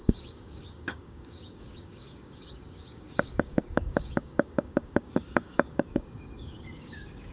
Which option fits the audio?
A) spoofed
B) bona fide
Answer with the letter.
A